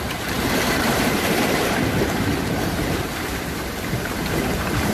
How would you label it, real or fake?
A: fake